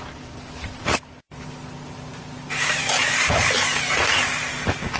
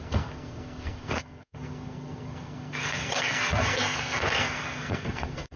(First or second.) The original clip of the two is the first